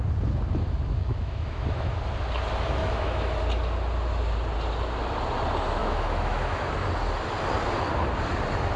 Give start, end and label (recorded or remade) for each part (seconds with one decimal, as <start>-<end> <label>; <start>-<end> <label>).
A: 0.0-1.0 recorded; 1.0-1.9 remade; 1.9-2.8 recorded; 2.8-3.4 remade; 3.4-5.8 recorded; 5.8-6.7 remade; 6.7-8.8 recorded